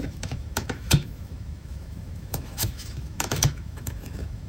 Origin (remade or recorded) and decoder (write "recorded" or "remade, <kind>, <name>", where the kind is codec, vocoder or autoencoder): remade, autoencoder, DAC-VAE